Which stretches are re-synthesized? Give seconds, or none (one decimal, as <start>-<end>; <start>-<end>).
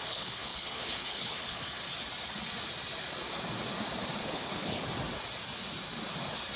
0.0-1.8; 4.2-4.8